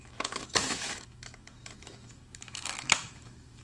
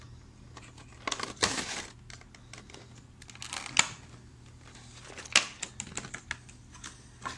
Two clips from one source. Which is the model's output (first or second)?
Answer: first